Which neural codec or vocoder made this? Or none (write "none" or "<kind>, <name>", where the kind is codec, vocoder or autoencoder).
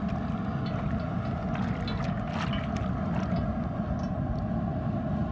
none